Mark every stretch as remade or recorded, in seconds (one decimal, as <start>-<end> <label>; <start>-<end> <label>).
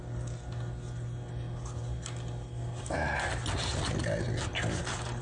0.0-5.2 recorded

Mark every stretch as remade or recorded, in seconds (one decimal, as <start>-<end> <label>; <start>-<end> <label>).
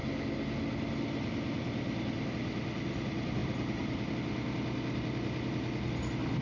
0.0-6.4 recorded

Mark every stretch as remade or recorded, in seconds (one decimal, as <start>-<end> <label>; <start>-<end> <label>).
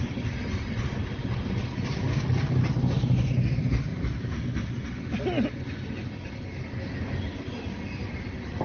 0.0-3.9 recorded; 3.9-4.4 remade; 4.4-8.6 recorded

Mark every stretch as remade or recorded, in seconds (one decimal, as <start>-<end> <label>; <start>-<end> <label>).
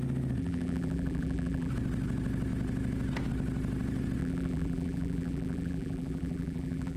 0.0-0.4 recorded; 0.4-1.7 remade; 1.7-4.2 recorded; 4.2-7.0 remade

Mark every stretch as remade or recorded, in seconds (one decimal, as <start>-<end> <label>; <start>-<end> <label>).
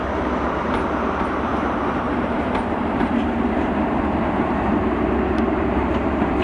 0.0-6.4 remade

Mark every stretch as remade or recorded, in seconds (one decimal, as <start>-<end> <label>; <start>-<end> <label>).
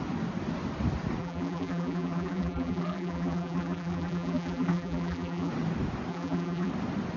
0.0-1.2 recorded; 1.2-5.5 remade; 5.5-6.1 recorded; 6.1-6.7 remade; 6.7-7.2 recorded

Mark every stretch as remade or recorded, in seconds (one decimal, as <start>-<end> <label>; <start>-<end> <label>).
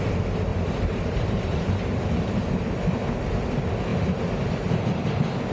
0.0-0.5 recorded; 0.5-1.7 remade; 1.7-5.5 recorded